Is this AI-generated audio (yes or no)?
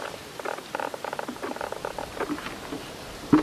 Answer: no